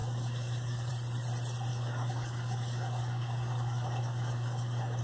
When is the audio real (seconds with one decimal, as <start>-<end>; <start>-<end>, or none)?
0.9-1.7